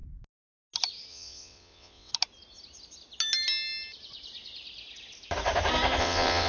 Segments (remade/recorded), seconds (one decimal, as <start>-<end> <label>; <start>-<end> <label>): 0.0-1.1 recorded; 1.1-2.1 remade; 2.1-6.0 recorded; 6.0-6.5 remade